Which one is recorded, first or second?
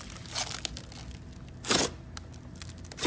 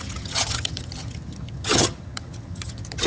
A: first